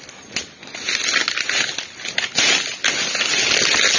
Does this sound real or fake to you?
real